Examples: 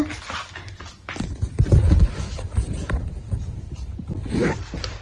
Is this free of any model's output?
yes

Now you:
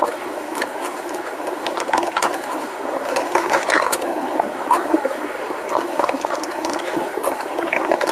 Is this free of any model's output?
no